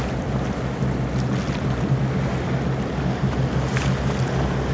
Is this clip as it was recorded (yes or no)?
yes